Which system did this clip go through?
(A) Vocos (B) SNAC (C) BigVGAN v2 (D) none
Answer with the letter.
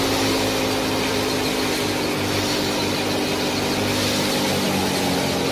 D